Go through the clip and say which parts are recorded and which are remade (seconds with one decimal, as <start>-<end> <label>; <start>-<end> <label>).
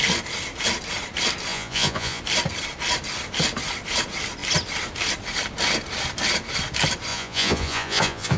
0.0-1.5 recorded; 1.5-2.2 remade; 2.2-7.1 recorded; 7.1-8.4 remade